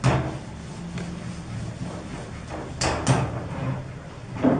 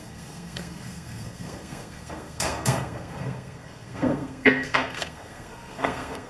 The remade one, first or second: second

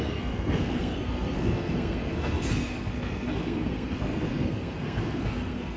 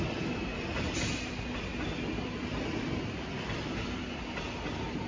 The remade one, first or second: first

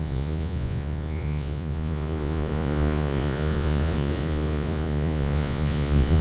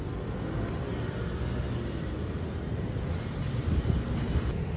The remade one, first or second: first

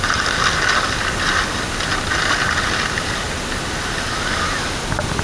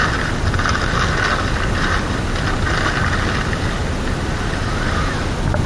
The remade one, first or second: first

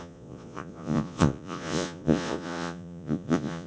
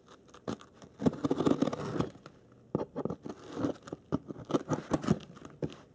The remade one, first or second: first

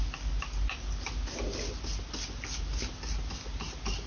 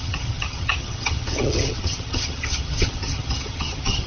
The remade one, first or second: second